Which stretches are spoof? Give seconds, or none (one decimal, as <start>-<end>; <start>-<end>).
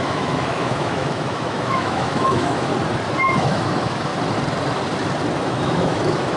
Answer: 0.0-2.7; 3.3-4.1; 5.4-6.4